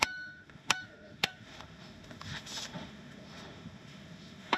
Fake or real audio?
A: fake